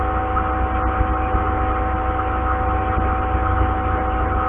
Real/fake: real